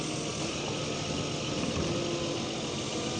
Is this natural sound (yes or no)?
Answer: yes